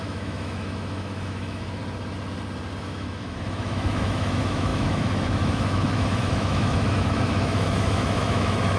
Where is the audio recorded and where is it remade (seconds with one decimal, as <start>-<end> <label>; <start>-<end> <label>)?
0.0-1.8 remade; 1.8-2.8 recorded; 2.8-8.8 remade